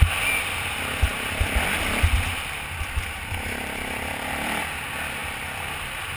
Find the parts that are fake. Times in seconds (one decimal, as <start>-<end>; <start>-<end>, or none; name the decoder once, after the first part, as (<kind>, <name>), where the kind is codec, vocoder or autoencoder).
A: 1.1-4.6 (vocoder, BigVGAN v2); 5.2-6.2